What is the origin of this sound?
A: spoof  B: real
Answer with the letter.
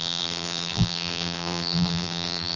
A